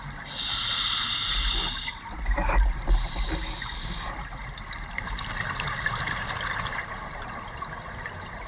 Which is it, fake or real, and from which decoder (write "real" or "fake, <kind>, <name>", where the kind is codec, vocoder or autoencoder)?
real